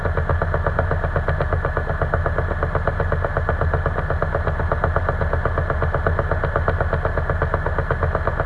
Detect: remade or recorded recorded